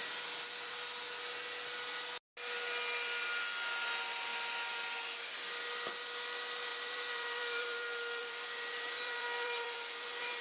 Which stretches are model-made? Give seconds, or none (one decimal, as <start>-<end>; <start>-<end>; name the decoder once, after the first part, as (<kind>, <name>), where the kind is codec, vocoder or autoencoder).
0.0-0.7 (vocoder, BigVGAN v2); 6.7-10.4